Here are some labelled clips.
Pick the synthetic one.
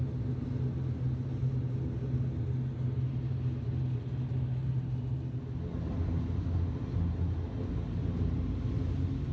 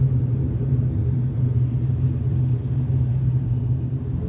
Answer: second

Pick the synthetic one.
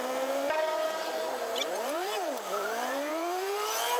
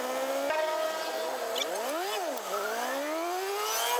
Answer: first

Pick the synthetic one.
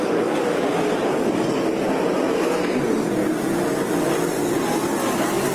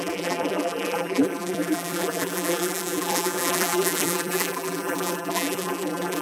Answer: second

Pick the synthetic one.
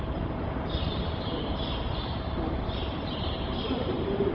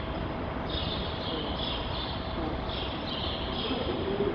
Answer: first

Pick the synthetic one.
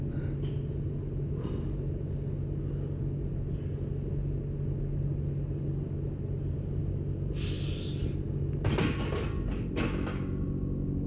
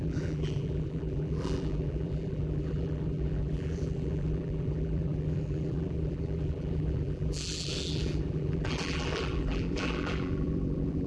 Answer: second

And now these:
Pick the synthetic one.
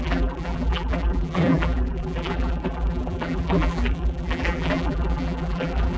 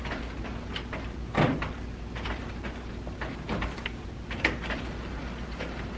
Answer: first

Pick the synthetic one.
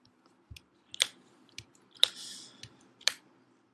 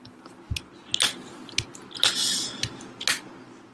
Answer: first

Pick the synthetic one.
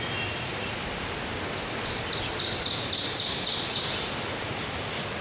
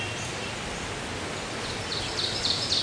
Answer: first